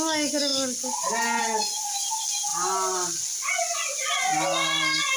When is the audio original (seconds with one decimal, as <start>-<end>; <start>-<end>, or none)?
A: 0.0-5.2

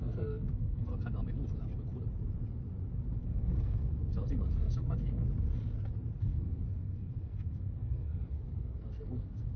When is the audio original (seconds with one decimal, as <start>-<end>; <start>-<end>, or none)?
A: 0.9-3.2; 5.2-6.2

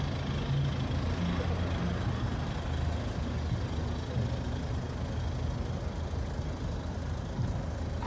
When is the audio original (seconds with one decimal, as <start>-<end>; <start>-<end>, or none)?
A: 0.0-8.1

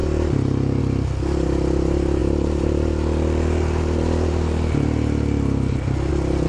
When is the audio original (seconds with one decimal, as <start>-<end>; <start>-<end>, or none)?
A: 0.0-6.5

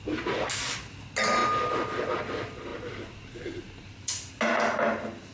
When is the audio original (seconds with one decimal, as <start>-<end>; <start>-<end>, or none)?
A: 0.0-5.3

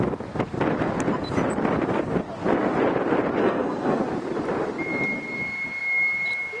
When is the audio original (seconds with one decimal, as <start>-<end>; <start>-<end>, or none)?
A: 0.0-3.4; 4.0-6.6

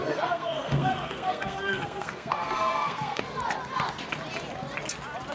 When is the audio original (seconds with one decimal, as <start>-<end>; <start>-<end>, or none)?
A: 3.2-5.3

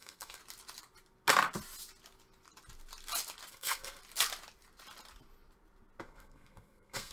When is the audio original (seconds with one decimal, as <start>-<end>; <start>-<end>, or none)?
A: 0.4-3.5; 4.0-6.0